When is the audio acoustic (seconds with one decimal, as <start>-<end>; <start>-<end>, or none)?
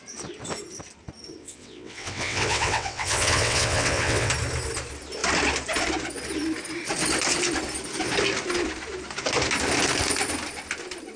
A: 0.0-1.4; 4.3-11.2